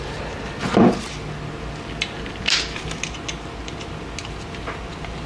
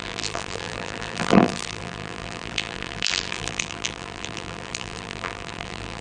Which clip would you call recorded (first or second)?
first